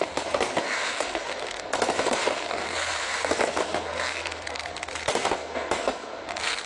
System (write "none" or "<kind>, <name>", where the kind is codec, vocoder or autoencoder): codec, SNAC